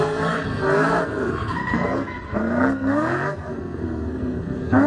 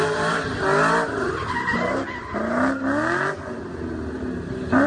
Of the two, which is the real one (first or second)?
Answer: second